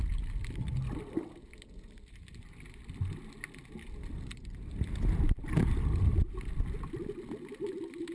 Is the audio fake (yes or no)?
no